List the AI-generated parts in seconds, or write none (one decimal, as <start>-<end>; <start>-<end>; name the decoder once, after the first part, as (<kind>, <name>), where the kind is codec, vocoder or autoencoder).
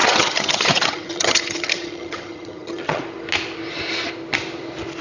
0.0-3.0 (vocoder, HiFi-GAN)